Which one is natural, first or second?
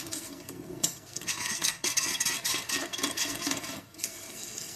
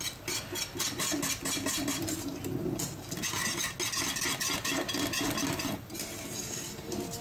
second